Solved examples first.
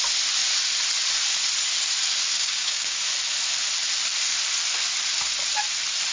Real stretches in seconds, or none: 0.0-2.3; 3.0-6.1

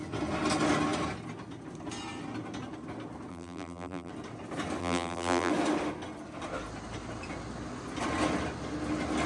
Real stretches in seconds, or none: 0.0-3.3; 4.1-4.8; 5.5-9.3

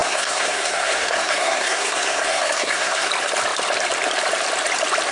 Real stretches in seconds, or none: 3.1-5.1